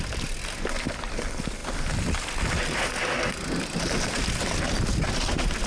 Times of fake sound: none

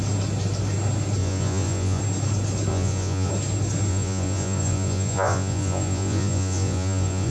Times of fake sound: 1.2-2.0 (vocoder, Vocos); 2.7-3.3; 3.9-7.3

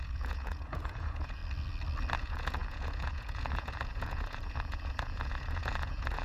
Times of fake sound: 0.0-1.4 (vocoder, Vocos); 2.2-6.2